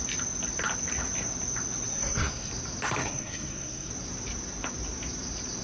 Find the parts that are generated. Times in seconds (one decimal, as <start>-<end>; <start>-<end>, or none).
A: 1.9-2.5; 3.0-3.9